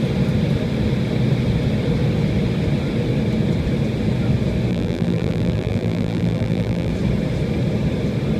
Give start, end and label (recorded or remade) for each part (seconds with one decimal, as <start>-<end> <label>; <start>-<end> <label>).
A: 0.0-4.7 recorded; 4.7-6.9 remade; 6.9-8.4 recorded